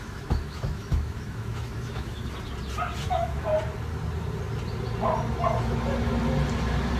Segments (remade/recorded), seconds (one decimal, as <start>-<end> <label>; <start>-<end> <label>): 0.0-2.2 remade; 2.2-3.1 recorded; 3.1-3.5 remade; 3.5-7.0 recorded